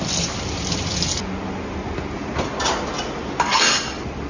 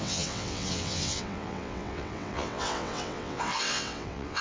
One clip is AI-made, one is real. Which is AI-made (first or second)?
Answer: second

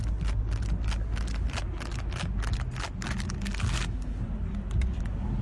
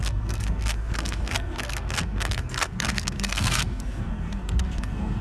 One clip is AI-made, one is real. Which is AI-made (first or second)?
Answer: second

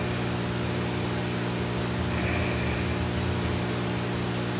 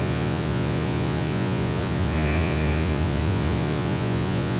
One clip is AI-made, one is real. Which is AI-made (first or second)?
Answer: second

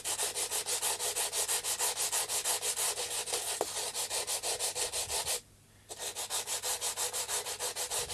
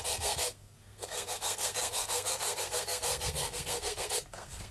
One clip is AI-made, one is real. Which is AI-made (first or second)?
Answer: second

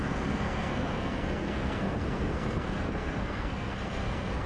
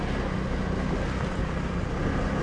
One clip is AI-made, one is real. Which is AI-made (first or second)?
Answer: first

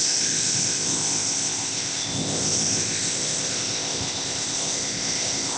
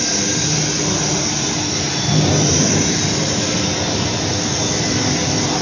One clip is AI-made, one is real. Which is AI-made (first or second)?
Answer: first